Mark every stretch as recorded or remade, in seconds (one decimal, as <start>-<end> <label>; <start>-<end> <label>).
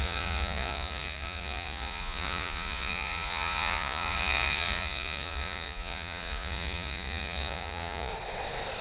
0.0-8.1 remade; 8.1-8.8 recorded